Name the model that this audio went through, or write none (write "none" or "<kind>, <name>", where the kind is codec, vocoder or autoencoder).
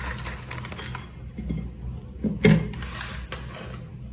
none